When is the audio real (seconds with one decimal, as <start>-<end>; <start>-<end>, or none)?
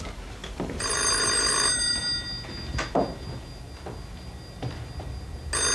0.0-0.4; 2.0-5.7